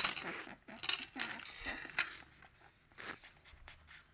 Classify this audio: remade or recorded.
recorded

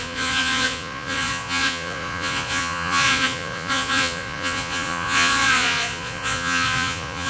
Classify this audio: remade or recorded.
remade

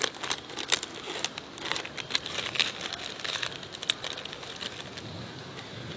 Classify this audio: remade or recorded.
recorded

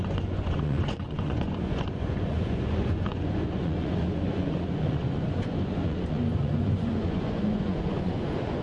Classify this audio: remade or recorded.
remade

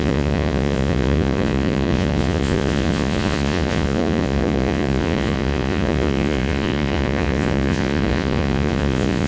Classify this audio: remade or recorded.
remade